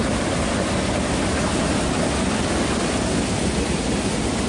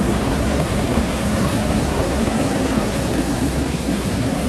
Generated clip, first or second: second